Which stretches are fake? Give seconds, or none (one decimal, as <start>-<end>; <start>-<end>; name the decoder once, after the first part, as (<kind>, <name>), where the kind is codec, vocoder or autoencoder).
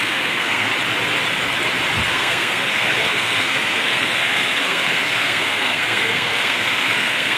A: 0.0-0.7 (codec, SNAC); 2.1-7.4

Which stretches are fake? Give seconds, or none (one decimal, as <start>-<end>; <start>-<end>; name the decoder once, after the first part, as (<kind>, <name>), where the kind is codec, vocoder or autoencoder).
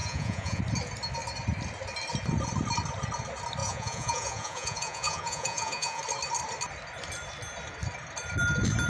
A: 0.0-0.6 (vocoder, Vocos); 3.6-6.0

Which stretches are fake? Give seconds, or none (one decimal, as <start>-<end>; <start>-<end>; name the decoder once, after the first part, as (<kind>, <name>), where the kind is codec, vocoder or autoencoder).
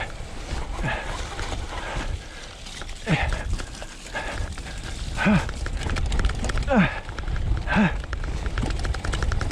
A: none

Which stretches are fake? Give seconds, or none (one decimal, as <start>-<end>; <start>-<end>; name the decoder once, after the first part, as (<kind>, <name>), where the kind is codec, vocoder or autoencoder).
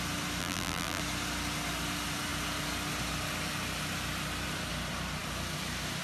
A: 0.4-1.0 (vocoder, BigVGAN v2)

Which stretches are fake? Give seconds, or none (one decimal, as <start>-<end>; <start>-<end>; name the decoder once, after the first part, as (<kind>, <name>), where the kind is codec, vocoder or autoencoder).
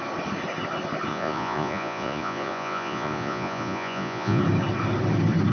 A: 1.1-4.4 (vocoder, Vocos)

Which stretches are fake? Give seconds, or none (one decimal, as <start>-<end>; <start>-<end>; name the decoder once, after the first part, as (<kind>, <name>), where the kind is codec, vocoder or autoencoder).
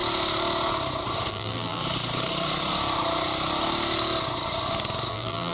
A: 1.3-1.8 (vocoder, BigVGAN v2); 5.1-5.5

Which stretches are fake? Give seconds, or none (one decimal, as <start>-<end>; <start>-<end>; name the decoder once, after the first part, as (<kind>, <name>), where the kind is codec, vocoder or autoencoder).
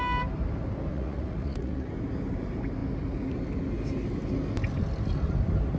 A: 0.9-1.9 (vocoder, Vocos)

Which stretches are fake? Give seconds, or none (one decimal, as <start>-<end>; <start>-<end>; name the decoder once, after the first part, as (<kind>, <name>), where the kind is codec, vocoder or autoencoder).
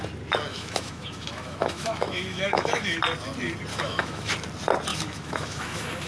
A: 0.5-3.0 (autoencoder, DAC-VAE); 3.7-4.3; 4.9-6.1